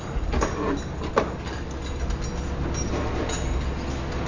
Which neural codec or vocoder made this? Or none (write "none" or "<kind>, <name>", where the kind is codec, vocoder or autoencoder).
none